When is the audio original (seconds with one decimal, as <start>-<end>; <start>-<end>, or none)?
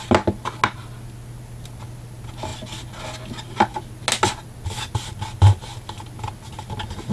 0.0-7.1